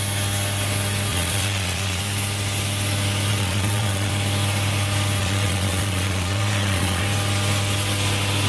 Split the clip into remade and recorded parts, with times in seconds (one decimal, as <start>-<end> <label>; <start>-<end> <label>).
0.0-1.1 recorded; 1.1-2.0 remade; 2.0-3.3 recorded; 3.3-4.1 remade; 4.1-5.2 recorded; 5.2-7.0 remade; 7.0-8.5 recorded